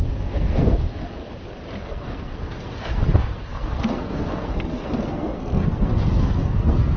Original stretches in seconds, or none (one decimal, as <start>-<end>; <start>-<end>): 1.2-1.8